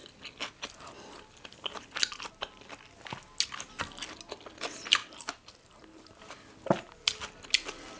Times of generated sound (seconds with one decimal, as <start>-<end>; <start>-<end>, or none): 5.0-6.2